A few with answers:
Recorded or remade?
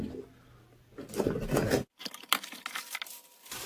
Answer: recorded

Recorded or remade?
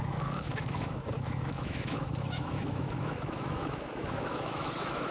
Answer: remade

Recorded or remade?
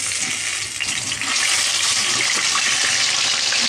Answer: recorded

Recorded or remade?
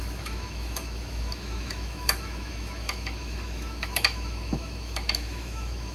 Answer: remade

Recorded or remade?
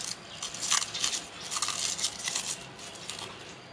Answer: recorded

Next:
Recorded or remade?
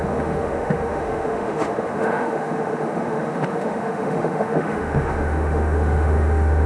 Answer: remade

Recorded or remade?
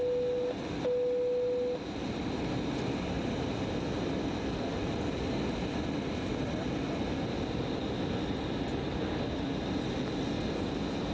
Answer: recorded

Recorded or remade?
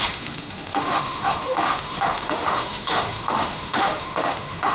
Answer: remade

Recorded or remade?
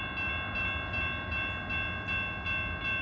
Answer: recorded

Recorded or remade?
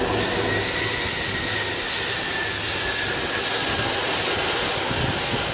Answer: recorded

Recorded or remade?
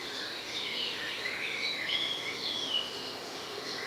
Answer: remade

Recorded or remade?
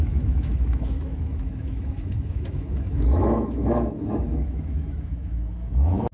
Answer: remade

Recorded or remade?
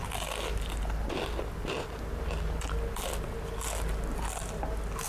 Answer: recorded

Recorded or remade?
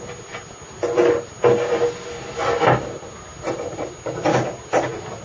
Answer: recorded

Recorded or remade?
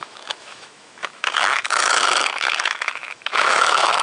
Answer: remade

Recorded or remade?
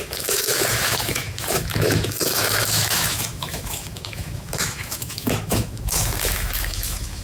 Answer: remade